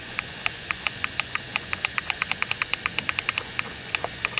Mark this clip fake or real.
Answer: fake